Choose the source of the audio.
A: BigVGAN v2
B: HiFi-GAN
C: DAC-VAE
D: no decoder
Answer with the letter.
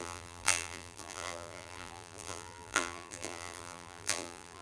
A